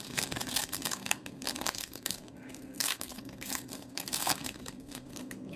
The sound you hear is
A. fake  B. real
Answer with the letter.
A